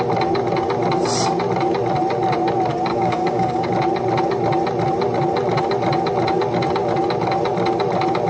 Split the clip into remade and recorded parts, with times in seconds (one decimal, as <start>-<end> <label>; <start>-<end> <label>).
0.0-2.9 recorded; 2.9-3.7 remade; 3.7-8.3 recorded